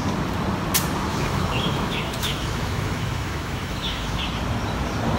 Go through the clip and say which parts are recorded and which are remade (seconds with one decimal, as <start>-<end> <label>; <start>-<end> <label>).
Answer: 0.0-1.1 recorded; 1.1-4.2 remade; 4.2-5.2 recorded